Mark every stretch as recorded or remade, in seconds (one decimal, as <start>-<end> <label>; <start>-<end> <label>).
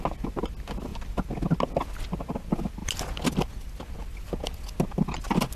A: 0.0-5.6 recorded